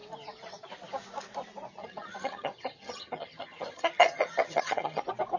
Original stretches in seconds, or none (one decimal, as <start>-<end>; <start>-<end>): 0.0-1.8; 5.0-5.4